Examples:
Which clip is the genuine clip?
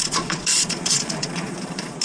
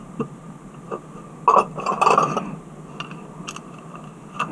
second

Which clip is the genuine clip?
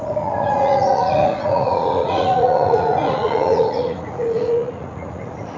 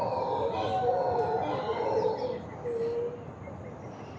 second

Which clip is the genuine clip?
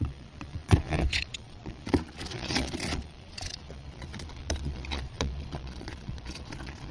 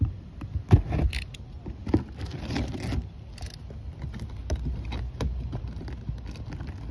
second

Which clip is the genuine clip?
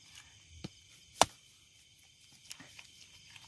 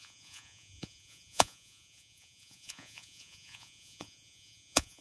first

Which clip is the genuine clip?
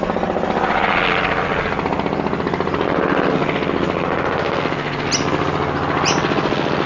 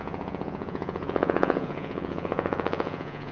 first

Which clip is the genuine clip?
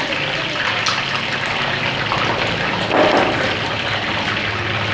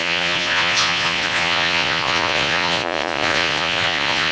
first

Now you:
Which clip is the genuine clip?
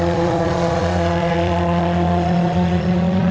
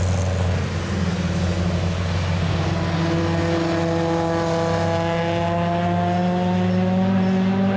second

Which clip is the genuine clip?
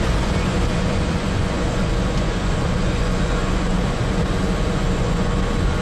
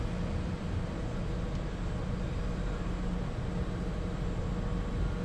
second